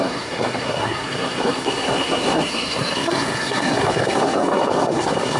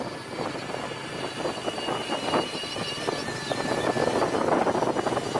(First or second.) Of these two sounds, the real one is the second